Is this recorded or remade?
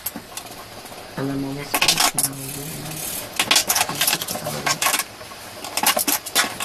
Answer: recorded